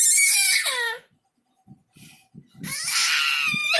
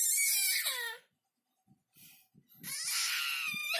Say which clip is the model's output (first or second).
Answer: second